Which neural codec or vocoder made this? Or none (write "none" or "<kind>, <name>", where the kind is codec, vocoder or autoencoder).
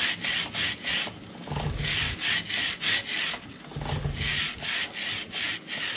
none